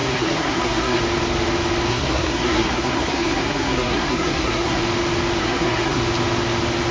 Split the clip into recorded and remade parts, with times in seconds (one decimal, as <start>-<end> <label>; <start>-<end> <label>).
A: 0.0-1.0 remade; 1.0-1.9 recorded; 1.9-4.8 remade; 4.8-5.4 recorded; 5.4-6.0 remade; 6.0-6.9 recorded